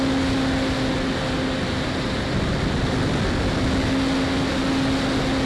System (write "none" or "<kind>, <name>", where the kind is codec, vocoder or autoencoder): none